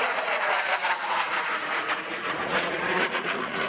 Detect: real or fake fake